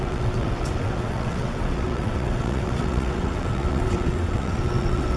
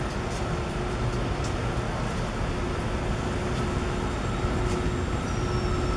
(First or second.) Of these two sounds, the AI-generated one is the first